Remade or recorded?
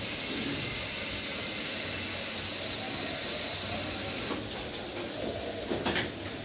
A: recorded